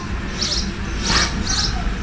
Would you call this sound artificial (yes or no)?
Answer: no